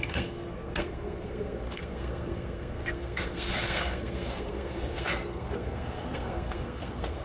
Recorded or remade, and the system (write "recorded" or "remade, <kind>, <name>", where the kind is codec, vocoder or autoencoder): remade, codec, SNAC